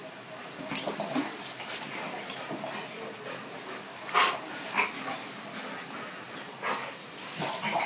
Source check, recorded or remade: recorded